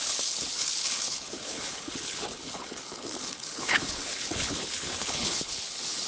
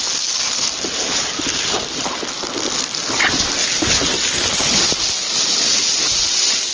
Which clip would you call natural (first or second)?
second